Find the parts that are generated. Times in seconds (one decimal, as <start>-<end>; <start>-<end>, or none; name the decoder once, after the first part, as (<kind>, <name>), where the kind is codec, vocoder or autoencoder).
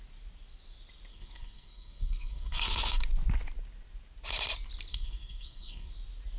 1.1-3.0 (codec, SNAC); 4.9-5.9